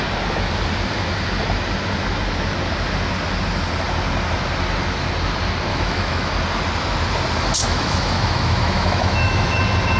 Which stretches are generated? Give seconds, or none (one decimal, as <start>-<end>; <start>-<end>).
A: 5.7-6.3; 7.6-9.6